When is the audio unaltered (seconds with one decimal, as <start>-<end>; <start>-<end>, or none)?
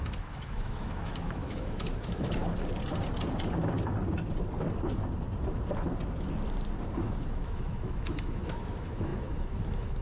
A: 2.4-7.0